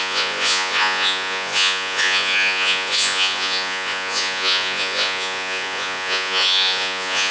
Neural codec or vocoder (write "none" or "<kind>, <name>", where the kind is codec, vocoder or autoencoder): vocoder, Vocos